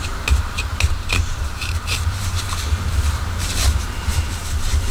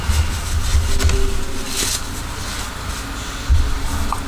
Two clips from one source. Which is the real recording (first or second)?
second